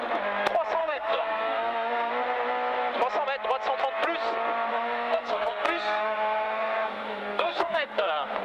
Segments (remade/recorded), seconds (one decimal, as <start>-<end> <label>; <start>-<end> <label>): 0.0-0.8 recorded; 0.8-2.1 remade; 2.1-4.7 recorded; 4.7-8.4 remade